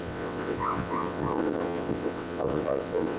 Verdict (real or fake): fake